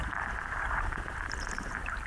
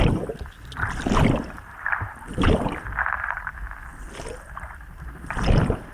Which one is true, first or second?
second